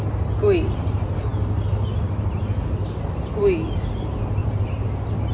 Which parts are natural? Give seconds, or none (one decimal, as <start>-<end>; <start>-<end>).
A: 0.0-4.4